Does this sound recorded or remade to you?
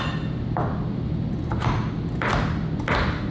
recorded